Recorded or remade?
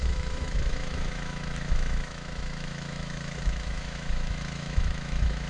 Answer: remade